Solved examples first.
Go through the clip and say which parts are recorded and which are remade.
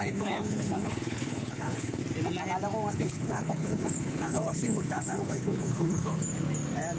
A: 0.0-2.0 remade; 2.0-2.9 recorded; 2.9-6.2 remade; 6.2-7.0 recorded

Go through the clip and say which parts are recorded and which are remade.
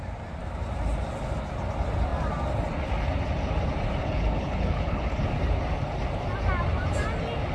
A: 0.0-4.0 recorded; 4.0-5.2 remade; 5.2-7.5 recorded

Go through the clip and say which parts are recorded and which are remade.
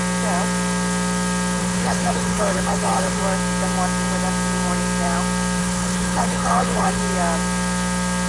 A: 0.0-1.6 recorded; 1.6-3.2 remade; 3.2-5.6 recorded; 5.6-7.0 remade; 7.0-8.3 recorded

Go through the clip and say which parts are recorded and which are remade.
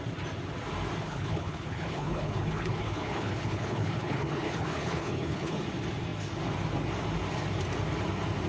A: 0.0-1.0 recorded; 1.0-5.6 remade; 5.6-8.5 recorded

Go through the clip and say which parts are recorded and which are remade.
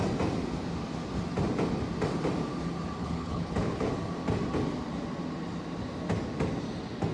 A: 0.0-3.0 recorded; 3.0-3.9 remade; 3.9-7.1 recorded